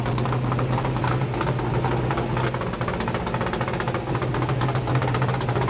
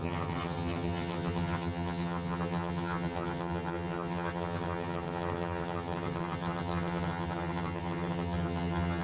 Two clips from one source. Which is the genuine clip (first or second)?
first